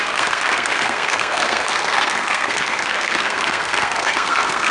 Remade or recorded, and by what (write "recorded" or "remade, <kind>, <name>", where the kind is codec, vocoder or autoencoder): remade, codec, SNAC